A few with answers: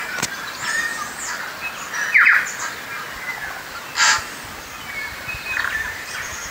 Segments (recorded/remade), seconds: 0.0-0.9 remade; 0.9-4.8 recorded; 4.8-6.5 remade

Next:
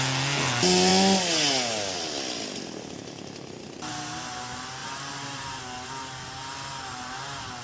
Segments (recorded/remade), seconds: 0.0-4.8 recorded; 4.8-5.6 remade; 5.6-7.6 recorded

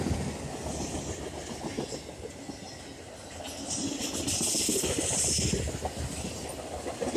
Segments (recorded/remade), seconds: 0.0-7.2 recorded

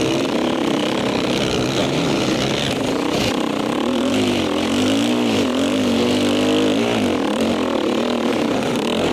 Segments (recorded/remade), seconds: 0.0-9.1 recorded

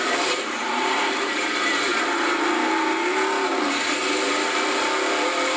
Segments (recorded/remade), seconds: 0.0-1.9 remade; 1.9-5.6 recorded